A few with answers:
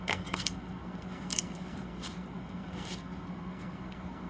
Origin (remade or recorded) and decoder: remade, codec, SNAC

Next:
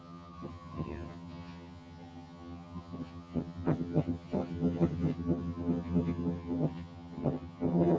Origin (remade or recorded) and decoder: remade, vocoder, HiFi-GAN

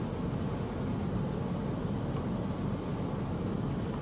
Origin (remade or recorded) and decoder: recorded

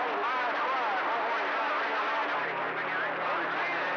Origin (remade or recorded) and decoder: recorded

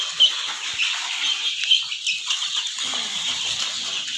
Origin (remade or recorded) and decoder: remade, vocoder, BigVGAN v2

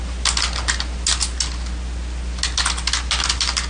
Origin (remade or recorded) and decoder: recorded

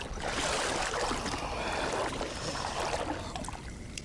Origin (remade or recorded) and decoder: recorded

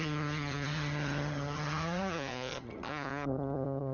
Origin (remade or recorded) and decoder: remade, vocoder, HiFi-GAN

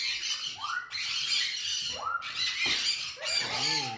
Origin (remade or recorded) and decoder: recorded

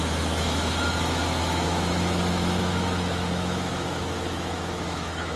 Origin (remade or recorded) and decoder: remade, autoencoder, DAC-VAE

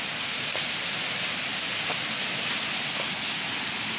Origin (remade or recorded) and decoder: recorded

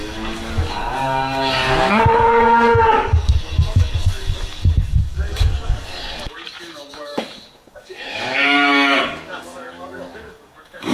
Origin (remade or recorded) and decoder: remade, codec, DAC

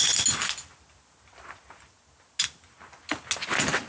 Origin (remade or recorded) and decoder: recorded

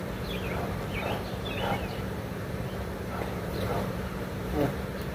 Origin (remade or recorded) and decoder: remade, vocoder, BigVGAN v2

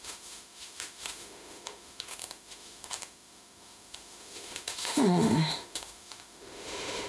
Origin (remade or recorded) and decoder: remade, autoencoder, DAC-VAE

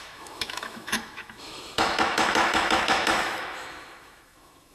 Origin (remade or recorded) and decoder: remade, autoencoder, DAC-VAE